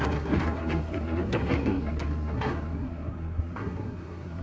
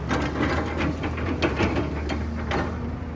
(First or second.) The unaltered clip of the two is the second